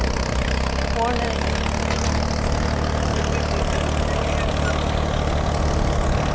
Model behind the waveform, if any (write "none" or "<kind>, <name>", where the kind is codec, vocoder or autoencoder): none